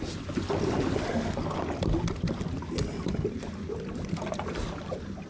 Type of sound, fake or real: real